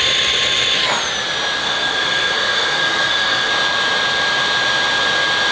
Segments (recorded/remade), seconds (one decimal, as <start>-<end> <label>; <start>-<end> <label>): 0.0-1.6 recorded; 1.6-3.5 remade; 3.5-5.5 recorded